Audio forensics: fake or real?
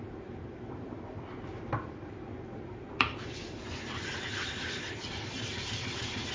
fake